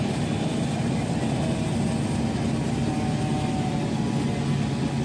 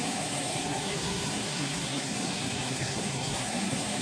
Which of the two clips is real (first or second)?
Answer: first